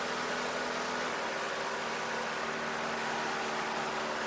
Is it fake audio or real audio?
real